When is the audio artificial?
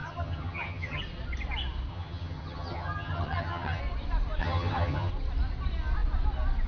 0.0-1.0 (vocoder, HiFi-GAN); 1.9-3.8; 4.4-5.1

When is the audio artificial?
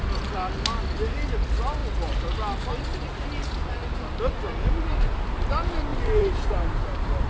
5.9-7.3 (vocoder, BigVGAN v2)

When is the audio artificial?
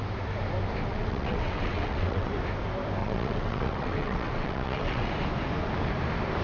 0.9-2.3 (vocoder, WaveNeXt); 3.0-5.1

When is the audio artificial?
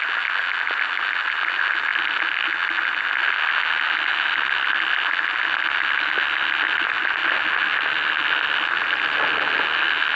none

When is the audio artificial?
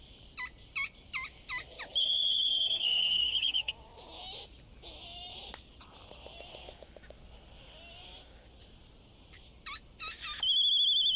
2.0-3.7 (codec, SNAC)